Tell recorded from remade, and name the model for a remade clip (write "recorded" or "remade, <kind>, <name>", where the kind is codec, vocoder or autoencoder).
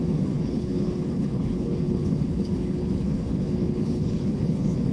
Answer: remade, codec, HILCodec